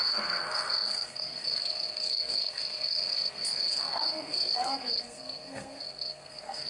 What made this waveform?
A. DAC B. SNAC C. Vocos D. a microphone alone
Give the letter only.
B